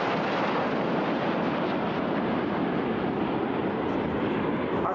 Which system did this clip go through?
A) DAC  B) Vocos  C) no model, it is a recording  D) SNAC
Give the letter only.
C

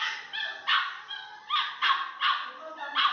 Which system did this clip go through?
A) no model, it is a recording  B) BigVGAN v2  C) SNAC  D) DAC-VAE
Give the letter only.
B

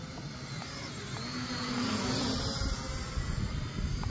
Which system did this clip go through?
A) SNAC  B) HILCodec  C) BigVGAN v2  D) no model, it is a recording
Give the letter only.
D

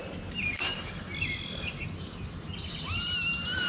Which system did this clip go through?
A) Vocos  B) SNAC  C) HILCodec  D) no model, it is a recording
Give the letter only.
D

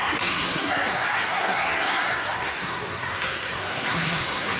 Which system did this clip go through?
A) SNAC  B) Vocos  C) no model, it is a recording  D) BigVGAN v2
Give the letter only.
A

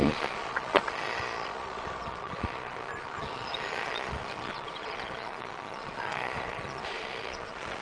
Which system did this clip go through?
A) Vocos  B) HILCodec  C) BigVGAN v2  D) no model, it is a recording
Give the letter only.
A